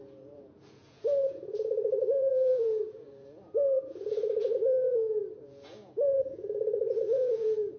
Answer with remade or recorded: remade